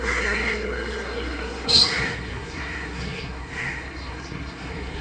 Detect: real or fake fake